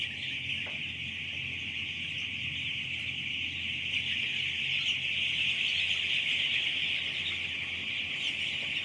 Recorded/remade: recorded